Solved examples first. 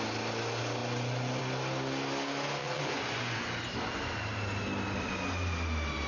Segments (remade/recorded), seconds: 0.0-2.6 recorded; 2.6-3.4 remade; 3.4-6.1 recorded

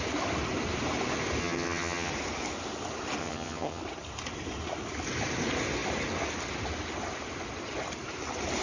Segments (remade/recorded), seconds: 0.0-1.4 recorded; 1.4-2.1 remade; 2.1-3.2 recorded; 3.2-3.8 remade; 3.8-8.6 recorded

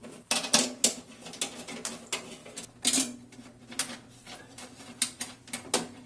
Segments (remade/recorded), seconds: 0.0-6.1 recorded

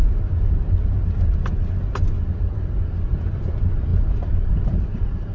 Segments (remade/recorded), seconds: 0.0-3.2 recorded; 3.2-5.3 remade

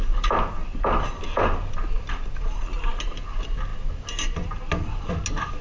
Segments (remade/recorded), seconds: 0.0-5.6 recorded

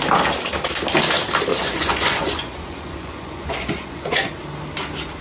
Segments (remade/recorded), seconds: 0.0-1.5 recorded; 1.5-4.4 remade; 4.4-5.2 recorded

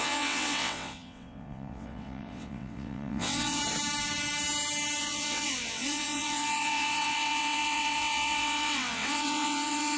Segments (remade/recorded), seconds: 0.0-3.6 remade; 3.6-5.0 recorded; 5.0-10.0 remade

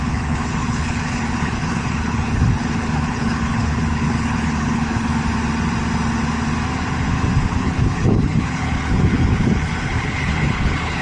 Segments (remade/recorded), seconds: 0.0-5.1 remade; 5.1-7.4 recorded; 7.4-11.0 remade